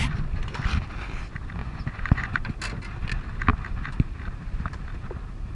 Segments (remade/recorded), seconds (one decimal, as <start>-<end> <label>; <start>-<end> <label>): 0.0-1.6 recorded; 1.6-2.5 remade; 2.5-5.5 recorded